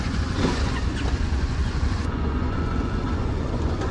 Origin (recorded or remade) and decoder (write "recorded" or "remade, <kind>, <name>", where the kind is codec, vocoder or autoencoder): remade, vocoder, Vocos